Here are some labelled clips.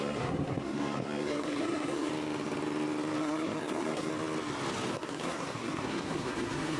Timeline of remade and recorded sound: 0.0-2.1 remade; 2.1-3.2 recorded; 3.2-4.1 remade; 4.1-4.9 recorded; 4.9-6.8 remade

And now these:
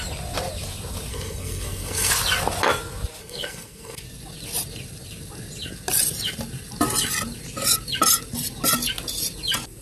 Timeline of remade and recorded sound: 0.0-1.1 recorded; 1.1-2.1 remade; 2.1-3.2 recorded; 3.2-4.0 remade; 4.0-9.8 recorded

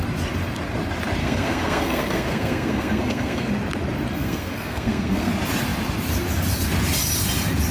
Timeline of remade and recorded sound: 0.0-1.2 recorded; 1.2-3.5 remade; 3.5-4.1 recorded; 4.1-5.3 remade; 5.3-7.7 recorded

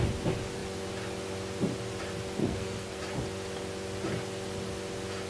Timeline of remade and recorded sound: 0.0-2.4 recorded; 2.4-3.0 remade; 3.0-5.3 recorded

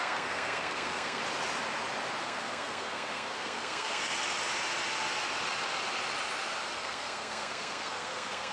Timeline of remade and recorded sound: 0.0-1.2 remade; 1.2-2.2 recorded; 2.2-4.0 remade; 4.0-6.7 recorded; 6.7-8.5 remade

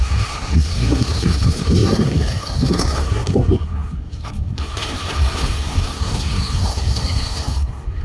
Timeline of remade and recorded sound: 0.0-8.0 remade

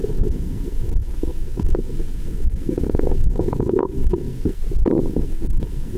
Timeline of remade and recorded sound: 0.0-4.6 remade; 4.6-5.1 recorded; 5.1-6.0 remade

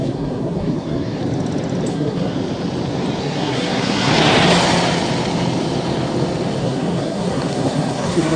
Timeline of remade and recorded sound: 0.0-1.2 remade; 1.2-1.9 recorded; 1.9-2.3 remade; 2.3-3.2 recorded; 3.2-4.1 remade; 4.1-6.6 recorded; 6.6-8.4 remade